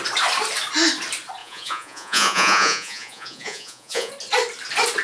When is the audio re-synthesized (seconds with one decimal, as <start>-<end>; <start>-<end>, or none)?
1.4-4.1